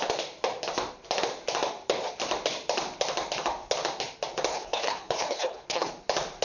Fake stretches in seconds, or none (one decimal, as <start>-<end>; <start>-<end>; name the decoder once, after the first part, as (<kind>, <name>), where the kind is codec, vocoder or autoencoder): 4.5-5.9 (codec, HILCodec)